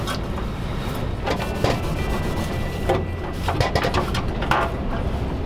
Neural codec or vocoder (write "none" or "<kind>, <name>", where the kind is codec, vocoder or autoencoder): none